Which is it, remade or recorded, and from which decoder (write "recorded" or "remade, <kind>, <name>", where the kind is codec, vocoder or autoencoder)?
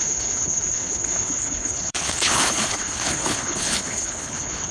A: remade, codec, HILCodec